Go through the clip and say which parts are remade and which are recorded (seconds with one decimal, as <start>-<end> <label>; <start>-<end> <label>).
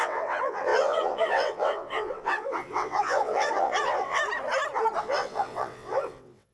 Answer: 0.0-4.2 remade; 4.2-5.0 recorded; 5.0-6.5 remade